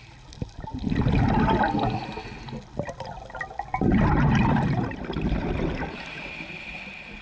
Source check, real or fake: real